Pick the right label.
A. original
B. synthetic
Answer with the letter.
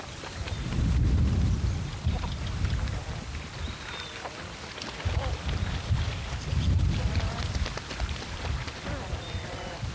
A